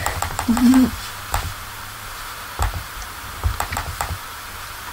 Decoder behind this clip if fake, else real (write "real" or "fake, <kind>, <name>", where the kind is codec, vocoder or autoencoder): fake, vocoder, BigVGAN v2